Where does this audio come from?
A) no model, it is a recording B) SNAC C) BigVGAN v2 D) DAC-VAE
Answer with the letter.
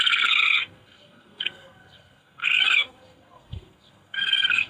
B